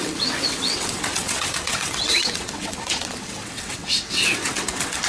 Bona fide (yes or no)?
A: no